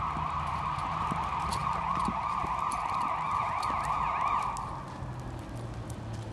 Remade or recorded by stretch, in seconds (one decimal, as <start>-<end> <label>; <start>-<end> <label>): 0.0-6.3 recorded